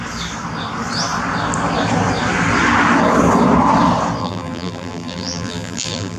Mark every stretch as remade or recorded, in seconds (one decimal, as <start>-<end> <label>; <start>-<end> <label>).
0.0-4.2 recorded; 4.2-6.2 remade